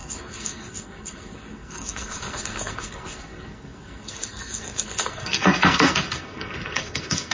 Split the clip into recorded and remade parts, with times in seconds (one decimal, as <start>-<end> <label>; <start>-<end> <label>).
0.0-7.3 remade